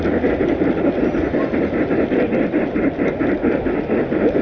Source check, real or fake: real